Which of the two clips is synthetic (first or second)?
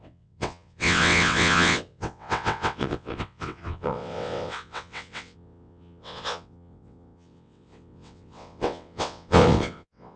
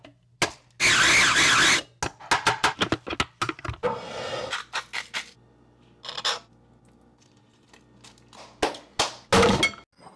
first